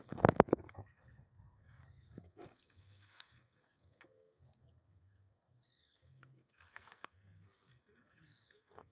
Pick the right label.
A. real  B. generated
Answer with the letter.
B